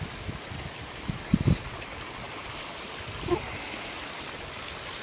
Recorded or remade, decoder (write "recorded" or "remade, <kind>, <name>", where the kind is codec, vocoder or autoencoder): recorded